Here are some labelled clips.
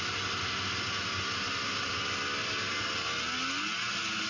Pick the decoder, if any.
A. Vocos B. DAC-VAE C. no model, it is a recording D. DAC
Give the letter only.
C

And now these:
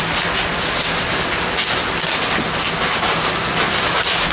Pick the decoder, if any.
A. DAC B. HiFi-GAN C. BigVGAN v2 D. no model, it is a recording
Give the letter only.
D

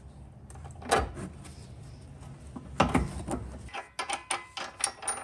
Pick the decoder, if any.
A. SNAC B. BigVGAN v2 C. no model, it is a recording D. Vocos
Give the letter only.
C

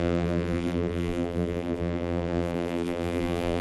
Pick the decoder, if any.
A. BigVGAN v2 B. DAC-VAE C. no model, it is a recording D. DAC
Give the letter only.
A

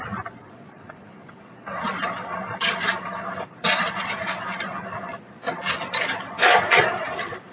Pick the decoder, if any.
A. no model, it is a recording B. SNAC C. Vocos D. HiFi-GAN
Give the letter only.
C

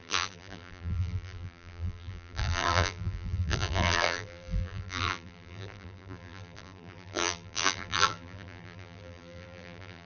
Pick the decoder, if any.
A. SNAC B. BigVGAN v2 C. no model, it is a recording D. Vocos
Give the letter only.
B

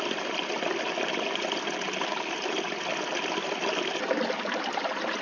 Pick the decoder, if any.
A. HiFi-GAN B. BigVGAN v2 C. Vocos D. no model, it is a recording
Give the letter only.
D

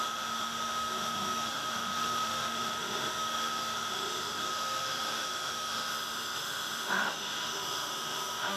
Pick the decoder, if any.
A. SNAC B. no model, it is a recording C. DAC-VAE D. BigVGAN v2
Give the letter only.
C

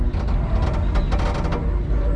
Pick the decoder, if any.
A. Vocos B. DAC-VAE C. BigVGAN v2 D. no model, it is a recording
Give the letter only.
D